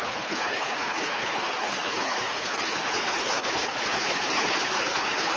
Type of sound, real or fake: fake